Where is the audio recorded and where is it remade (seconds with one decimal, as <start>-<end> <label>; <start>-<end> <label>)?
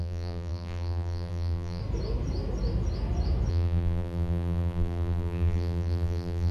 0.0-1.8 remade; 1.8-3.5 recorded; 3.5-6.5 remade